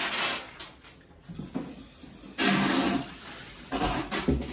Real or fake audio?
real